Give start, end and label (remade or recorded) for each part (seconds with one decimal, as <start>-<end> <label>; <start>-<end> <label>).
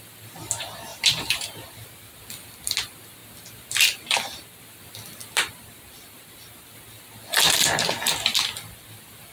0.0-0.9 recorded; 0.9-2.3 remade; 2.3-9.3 recorded